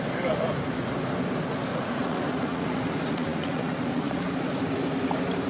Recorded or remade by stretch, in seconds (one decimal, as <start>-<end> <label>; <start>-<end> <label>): 0.0-1.7 recorded; 1.7-4.2 remade; 4.2-5.5 recorded